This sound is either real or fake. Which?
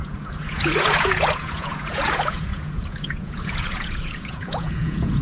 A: fake